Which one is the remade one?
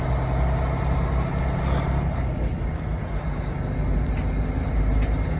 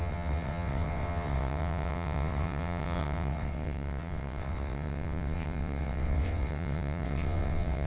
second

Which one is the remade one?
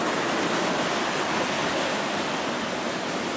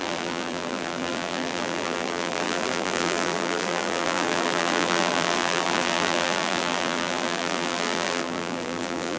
second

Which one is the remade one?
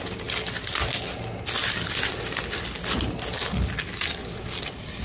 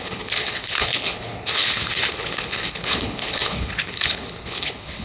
second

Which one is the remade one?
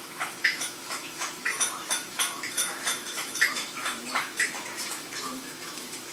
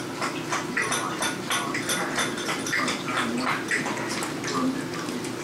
first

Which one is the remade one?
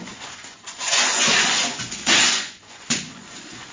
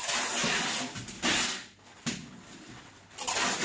first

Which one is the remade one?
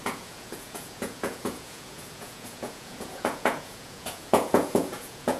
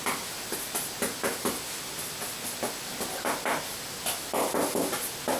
first